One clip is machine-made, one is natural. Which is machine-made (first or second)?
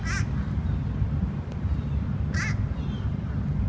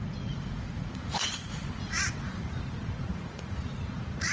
second